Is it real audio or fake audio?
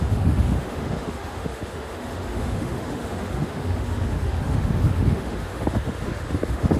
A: fake